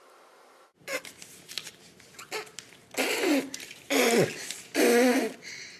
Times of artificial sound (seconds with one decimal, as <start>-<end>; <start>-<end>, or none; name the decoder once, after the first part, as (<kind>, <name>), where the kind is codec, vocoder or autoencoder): none